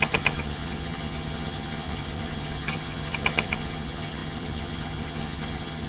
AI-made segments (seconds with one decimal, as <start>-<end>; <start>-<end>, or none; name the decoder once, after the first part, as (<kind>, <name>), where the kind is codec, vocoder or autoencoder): 0.0-5.9 (vocoder, HiFi-GAN)